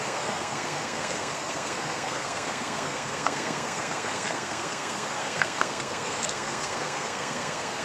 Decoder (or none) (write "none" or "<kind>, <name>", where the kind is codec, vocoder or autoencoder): codec, SNAC